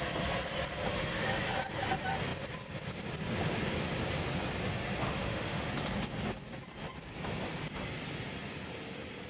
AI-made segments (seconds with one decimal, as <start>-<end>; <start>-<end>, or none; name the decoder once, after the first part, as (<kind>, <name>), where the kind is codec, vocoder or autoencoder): 5.0-5.7 (autoencoder, DAC-VAE)